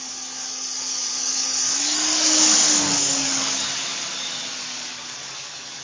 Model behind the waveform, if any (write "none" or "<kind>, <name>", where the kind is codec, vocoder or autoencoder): codec, DAC